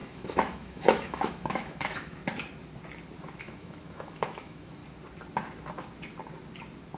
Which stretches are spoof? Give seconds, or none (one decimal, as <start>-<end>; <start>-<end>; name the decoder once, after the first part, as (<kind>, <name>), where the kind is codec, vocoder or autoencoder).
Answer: 0.0-2.2 (autoencoder, DAC-VAE); 3.4-4.8